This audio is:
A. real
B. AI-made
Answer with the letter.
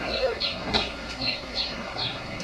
B